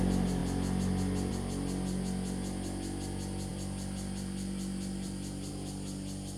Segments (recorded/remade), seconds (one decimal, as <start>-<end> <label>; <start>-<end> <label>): 0.0-3.5 recorded; 3.5-5.5 remade; 5.5-6.4 recorded